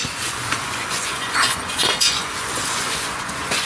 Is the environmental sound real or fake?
fake